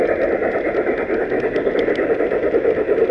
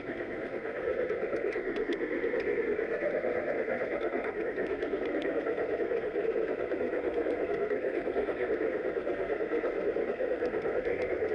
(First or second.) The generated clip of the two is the second